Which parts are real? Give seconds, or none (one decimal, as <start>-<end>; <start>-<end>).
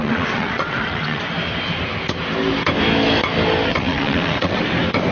1.2-3.7; 4.6-5.1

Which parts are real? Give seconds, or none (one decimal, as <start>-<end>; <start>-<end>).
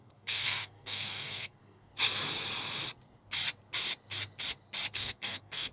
1.9-4.9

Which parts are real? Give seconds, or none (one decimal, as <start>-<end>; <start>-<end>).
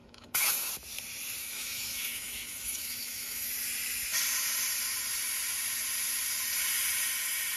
0.7-1.4; 3.5-7.6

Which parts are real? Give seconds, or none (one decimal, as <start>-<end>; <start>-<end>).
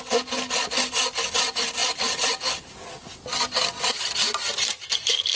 0.0-5.4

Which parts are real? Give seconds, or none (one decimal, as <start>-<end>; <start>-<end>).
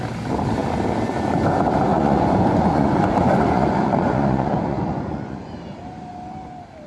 0.0-1.9; 5.6-6.9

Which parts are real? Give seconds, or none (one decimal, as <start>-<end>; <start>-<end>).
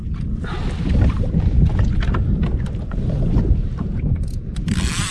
0.0-5.1